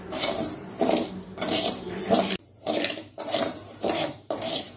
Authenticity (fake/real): fake